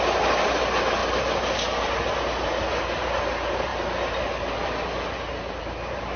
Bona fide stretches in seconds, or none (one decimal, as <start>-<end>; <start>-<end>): 0.0-6.2